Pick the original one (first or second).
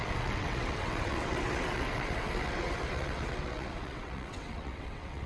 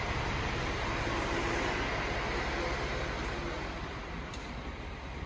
second